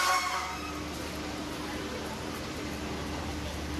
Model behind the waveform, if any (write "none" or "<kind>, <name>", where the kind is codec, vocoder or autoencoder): none